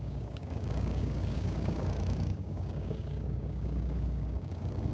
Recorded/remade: remade